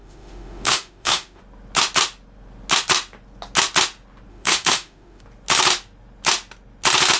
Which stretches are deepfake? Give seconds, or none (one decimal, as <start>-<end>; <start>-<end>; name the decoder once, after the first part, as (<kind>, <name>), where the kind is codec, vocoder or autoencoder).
0.0-1.4 (autoencoder, DAC-VAE); 4.3-5.2